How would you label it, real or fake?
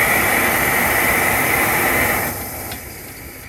fake